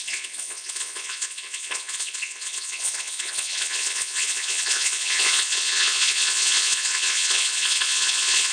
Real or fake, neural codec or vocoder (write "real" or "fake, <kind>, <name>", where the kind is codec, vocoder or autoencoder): fake, vocoder, Vocos